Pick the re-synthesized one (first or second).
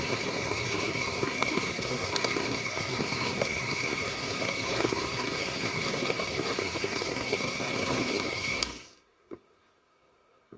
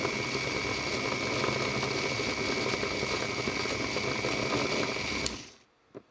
first